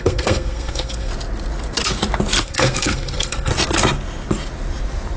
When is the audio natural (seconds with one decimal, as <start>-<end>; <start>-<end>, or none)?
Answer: 1.1-2.4; 3.5-5.2